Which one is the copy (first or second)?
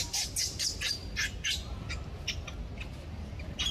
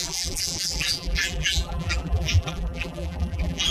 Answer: second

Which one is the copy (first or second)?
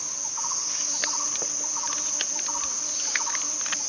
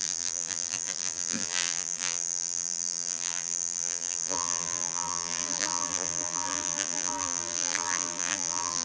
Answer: second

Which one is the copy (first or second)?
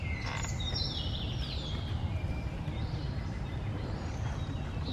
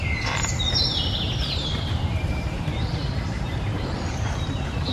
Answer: second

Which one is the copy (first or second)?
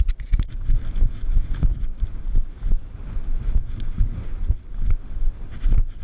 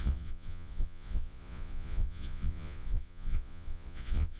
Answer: second